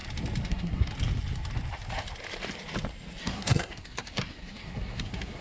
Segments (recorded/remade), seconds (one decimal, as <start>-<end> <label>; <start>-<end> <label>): 0.0-0.5 recorded; 0.5-0.9 remade; 0.9-3.2 recorded; 3.2-5.4 remade